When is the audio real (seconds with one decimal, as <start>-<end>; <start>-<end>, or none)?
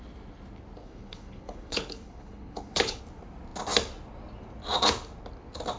0.0-0.8; 3.0-5.8